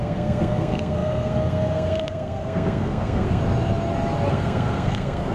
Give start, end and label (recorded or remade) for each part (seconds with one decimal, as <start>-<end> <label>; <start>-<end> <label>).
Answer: 0.0-3.4 remade; 3.4-4.3 recorded; 4.3-5.3 remade